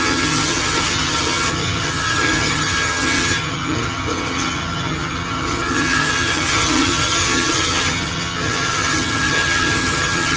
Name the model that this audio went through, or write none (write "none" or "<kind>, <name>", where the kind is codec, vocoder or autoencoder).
vocoder, HiFi-GAN